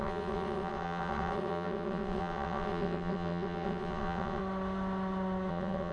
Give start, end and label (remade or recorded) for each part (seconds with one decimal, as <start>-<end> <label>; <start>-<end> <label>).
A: 0.0-4.4 remade; 4.4-5.5 recorded; 5.5-5.9 remade

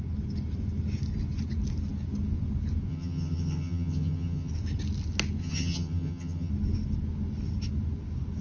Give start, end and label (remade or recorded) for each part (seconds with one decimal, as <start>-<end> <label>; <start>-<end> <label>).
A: 0.0-2.9 recorded; 2.9-4.5 remade; 4.5-5.4 recorded; 5.4-6.5 remade; 6.5-8.4 recorded

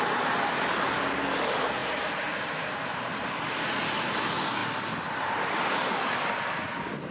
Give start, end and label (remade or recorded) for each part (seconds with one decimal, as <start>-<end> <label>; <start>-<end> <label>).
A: 0.0-7.1 recorded

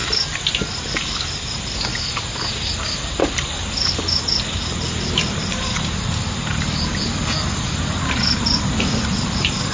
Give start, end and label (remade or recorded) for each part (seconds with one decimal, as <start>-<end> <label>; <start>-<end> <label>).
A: 0.0-9.7 recorded

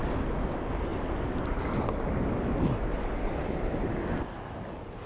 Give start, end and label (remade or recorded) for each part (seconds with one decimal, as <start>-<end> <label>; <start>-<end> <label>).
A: 0.0-5.1 recorded

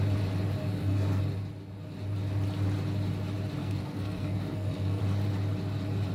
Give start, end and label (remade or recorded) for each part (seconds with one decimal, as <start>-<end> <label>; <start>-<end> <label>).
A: 0.0-0.6 recorded; 0.6-1.2 remade; 1.2-3.6 recorded; 3.6-5.0 remade; 5.0-6.1 recorded